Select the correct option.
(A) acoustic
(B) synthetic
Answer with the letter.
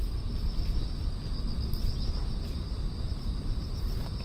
A